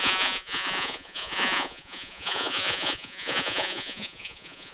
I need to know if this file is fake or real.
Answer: fake